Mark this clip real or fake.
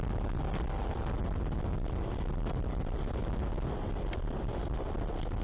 real